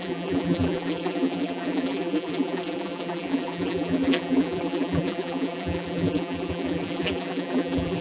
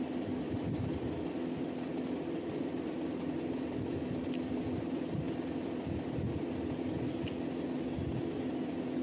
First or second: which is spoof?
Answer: first